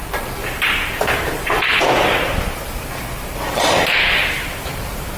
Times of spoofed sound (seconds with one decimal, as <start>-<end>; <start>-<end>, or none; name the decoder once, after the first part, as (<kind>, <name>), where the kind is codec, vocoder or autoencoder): 0.4-1.0 (vocoder, BigVGAN v2)